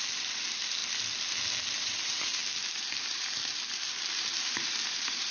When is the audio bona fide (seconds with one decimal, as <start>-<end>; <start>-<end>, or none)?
0.8-1.7; 2.4-3.0; 3.4-4.0